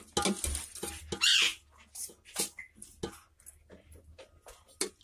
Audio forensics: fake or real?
real